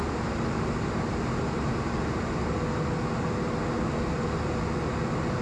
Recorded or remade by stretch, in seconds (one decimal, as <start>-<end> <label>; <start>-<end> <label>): 0.0-5.4 recorded